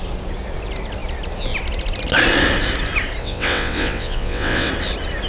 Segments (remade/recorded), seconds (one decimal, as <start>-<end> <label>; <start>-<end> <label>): 0.0-3.2 recorded; 3.2-4.7 remade; 4.7-5.3 recorded